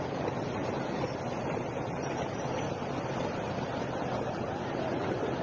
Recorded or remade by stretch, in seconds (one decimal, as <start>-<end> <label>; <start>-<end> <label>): 0.0-5.4 recorded